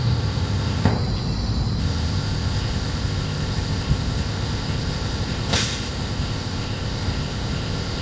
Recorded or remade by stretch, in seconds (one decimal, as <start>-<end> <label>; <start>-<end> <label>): 0.0-0.9 remade; 0.9-1.8 recorded; 1.8-8.0 remade